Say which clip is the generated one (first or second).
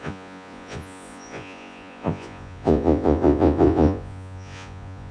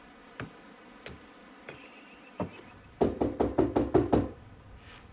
first